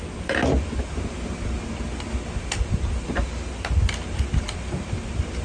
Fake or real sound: real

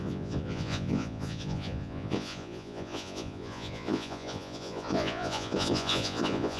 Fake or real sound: fake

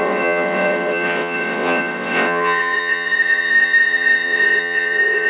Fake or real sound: fake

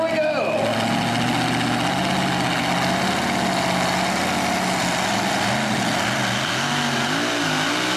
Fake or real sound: real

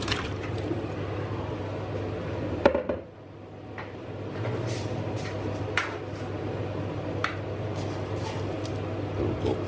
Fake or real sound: real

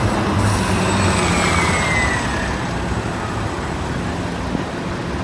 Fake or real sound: real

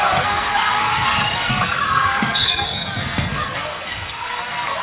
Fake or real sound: fake